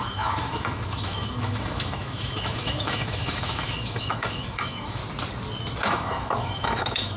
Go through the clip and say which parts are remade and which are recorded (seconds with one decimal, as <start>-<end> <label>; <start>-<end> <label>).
0.0-5.0 remade; 5.0-5.8 recorded; 5.8-7.2 remade